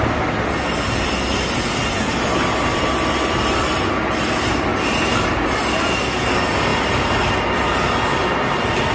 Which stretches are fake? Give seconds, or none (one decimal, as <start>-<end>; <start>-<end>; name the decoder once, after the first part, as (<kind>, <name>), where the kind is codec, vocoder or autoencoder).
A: 2.7-3.9 (vocoder, BigVGAN v2); 4.7-5.4